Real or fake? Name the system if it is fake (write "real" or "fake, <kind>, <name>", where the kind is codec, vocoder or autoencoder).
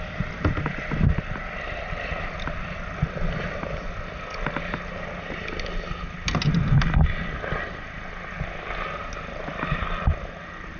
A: real